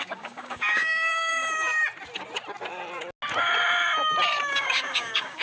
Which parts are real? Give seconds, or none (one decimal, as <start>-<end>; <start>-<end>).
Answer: 1.3-4.5